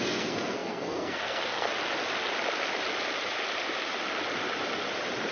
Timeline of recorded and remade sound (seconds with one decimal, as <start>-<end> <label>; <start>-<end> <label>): 0.0-1.7 remade; 1.7-5.3 recorded